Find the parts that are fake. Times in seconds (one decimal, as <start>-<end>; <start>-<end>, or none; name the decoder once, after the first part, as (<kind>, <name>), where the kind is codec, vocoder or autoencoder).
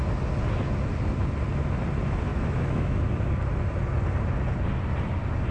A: 2.3-3.1 (autoencoder, DAC-VAE)